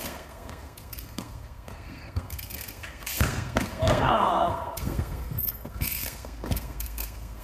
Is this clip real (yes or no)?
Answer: no